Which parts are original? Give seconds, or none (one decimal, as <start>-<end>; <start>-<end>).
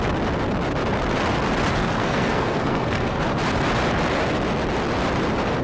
0.0-1.8; 3.2-5.6